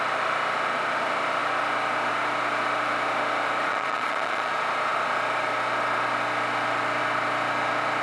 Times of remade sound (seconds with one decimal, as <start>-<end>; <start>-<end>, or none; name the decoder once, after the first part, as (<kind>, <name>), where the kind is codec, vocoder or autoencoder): 3.7-4.5 (vocoder, Vocos)